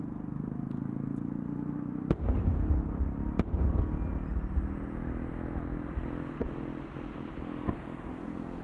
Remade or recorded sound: recorded